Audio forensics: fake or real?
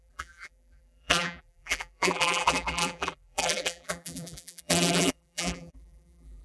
fake